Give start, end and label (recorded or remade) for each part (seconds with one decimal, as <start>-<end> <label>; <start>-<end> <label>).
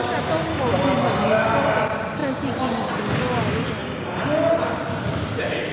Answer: 0.0-0.5 recorded; 0.5-1.8 remade; 1.8-3.8 recorded; 3.8-4.5 remade; 4.5-5.7 recorded